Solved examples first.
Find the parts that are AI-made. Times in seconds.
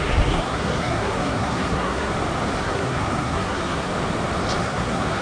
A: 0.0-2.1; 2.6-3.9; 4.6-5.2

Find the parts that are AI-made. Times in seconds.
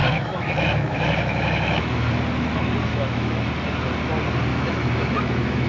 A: 0.0-2.1; 2.9-3.5; 4.5-5.7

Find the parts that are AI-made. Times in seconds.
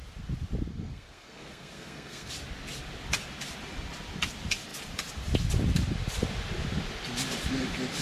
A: 0.7-2.3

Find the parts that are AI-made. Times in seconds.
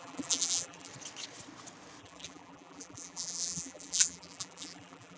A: 0.0-0.9; 2.0-5.2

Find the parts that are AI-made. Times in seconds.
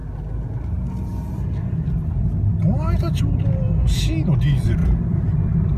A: 4.8-5.8